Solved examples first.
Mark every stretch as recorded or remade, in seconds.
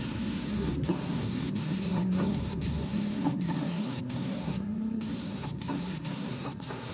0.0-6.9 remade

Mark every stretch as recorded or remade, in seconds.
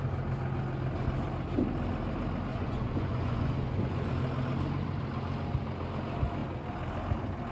0.0-2.5 recorded; 2.5-4.1 remade; 4.1-7.5 recorded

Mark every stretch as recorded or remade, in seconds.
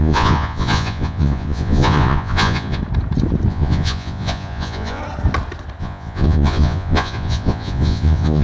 0.0-2.8 remade; 2.8-3.5 recorded; 3.5-5.0 remade; 5.0-5.8 recorded; 5.8-8.4 remade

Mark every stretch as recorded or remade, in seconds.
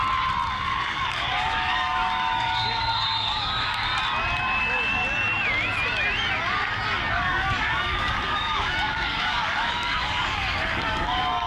0.0-0.5 recorded; 0.5-3.9 remade; 3.9-4.6 recorded; 4.6-5.0 remade; 5.0-7.1 recorded; 7.1-11.5 remade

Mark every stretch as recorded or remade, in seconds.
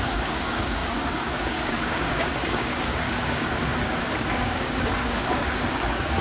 0.0-6.2 remade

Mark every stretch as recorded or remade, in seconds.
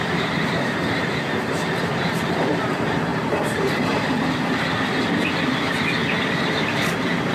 0.0-4.2 remade; 4.2-6.3 recorded; 6.3-7.3 remade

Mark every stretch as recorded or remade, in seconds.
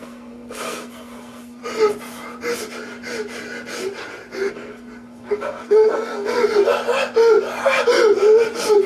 0.0-1.6 remade; 1.6-4.5 recorded; 4.5-6.4 remade; 6.4-8.9 recorded